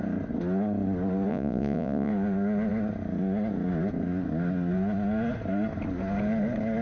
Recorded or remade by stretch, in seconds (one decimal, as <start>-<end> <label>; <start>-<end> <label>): 0.0-1.3 recorded; 1.3-2.1 remade; 2.1-6.8 recorded